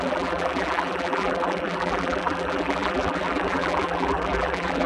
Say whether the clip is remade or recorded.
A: remade